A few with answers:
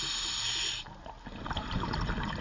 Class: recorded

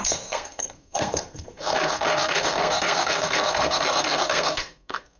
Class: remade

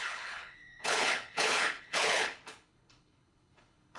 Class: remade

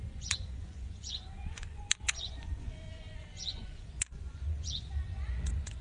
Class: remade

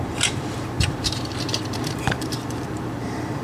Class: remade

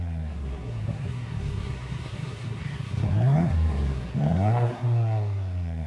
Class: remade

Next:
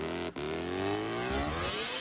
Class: recorded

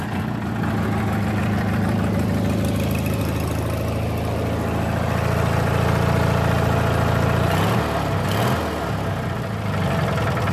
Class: recorded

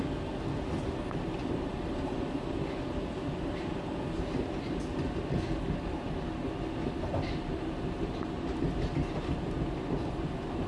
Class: recorded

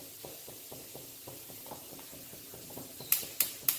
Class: remade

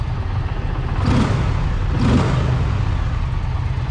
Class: recorded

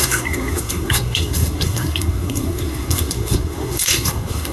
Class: remade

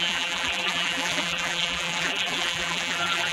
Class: remade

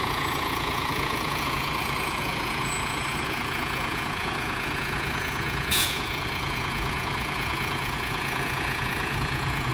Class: remade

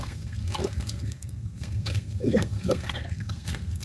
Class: remade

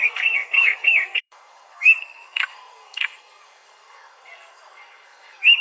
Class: remade